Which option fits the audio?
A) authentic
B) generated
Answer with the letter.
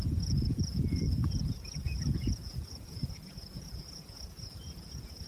B